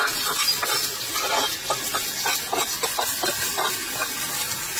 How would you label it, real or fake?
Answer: real